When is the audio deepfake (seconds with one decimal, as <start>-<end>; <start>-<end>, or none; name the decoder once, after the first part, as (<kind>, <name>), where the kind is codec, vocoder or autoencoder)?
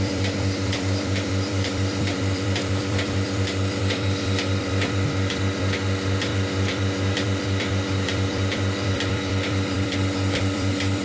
0.0-11.0 (vocoder, BigVGAN v2)